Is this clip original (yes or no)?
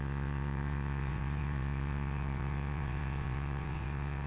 no